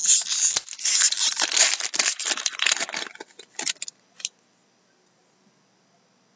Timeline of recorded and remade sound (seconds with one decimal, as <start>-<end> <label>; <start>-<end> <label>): 0.0-6.4 recorded